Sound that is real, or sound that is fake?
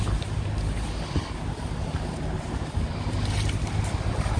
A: real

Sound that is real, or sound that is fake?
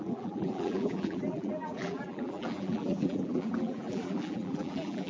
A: fake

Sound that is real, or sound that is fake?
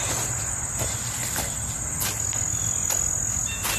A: real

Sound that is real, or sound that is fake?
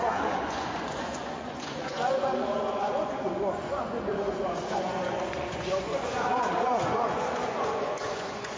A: fake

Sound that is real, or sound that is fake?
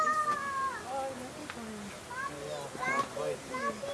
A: real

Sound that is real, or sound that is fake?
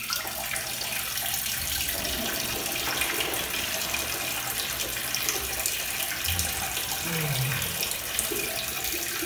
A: fake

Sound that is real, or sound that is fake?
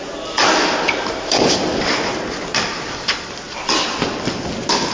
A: real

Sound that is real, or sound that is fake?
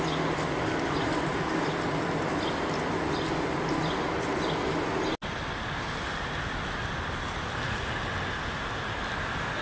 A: real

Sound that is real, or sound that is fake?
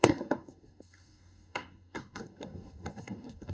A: fake